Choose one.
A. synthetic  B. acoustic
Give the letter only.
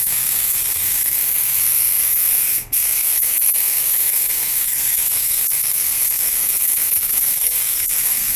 A